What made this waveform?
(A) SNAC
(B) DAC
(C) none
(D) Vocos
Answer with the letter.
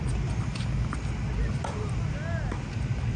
C